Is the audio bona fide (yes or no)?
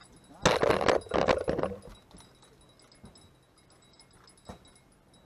yes